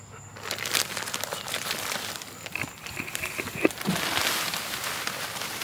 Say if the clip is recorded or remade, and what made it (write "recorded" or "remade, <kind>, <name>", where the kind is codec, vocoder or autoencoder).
recorded